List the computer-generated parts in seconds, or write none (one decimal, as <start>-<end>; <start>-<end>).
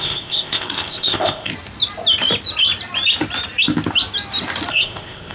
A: 0.0-1.5; 4.7-5.3